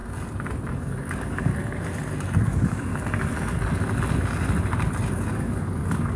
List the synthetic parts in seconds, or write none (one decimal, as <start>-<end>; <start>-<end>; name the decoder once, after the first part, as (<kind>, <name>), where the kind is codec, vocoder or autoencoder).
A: 0.7-1.5 (codec, DAC); 2.5-2.9; 5.1-6.2